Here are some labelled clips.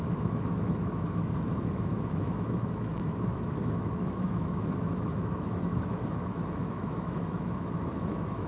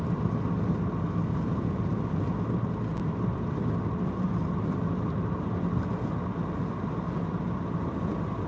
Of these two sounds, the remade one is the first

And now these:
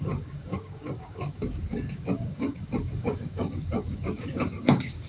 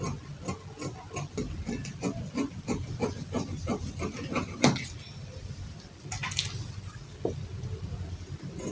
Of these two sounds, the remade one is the first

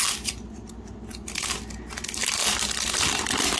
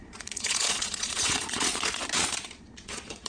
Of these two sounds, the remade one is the second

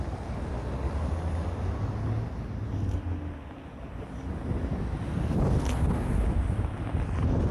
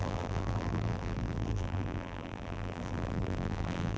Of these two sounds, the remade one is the second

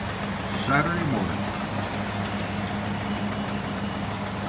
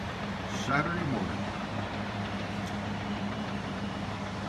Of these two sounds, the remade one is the second